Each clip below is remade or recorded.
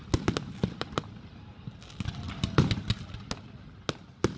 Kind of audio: recorded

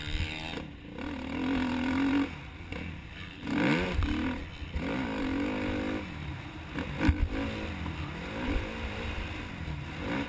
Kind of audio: recorded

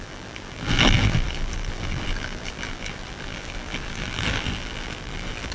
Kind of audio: remade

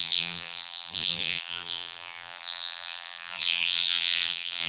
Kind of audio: remade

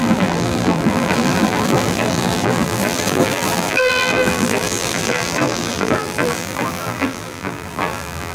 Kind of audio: remade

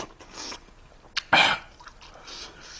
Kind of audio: recorded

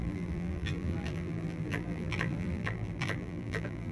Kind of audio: remade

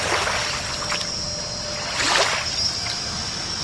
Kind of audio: recorded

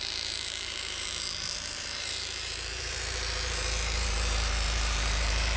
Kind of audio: remade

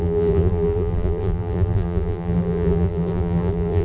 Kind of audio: remade